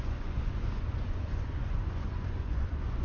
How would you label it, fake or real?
fake